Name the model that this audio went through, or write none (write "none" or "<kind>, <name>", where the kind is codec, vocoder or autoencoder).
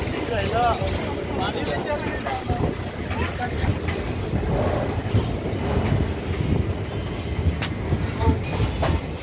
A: none